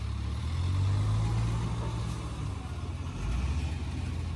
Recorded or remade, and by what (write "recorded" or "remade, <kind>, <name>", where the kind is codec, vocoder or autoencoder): recorded